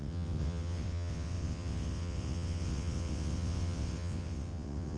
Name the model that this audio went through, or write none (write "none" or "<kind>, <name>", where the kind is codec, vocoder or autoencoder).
vocoder, WaveNeXt